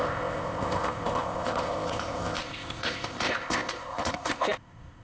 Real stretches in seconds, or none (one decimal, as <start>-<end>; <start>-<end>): none